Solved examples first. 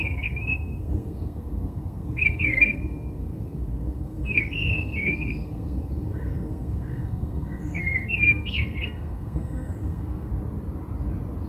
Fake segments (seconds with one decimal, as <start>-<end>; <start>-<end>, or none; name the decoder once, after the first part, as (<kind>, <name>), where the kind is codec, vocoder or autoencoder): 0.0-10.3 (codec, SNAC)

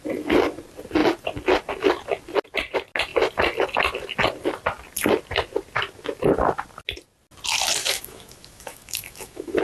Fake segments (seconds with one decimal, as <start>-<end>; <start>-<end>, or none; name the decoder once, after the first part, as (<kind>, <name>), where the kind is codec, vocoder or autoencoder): 7.8-9.6 (autoencoder, DAC-VAE)

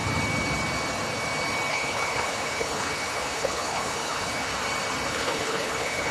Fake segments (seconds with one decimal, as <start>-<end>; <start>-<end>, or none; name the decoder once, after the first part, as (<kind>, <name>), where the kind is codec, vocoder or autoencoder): 1.7-4.5 (codec, HILCodec); 5.1-6.1